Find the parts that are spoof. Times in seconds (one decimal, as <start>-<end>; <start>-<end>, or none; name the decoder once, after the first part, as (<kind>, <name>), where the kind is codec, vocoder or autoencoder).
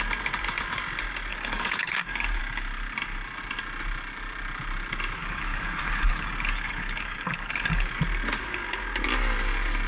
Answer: 1.3-2.4 (codec, DAC); 5.2-7.9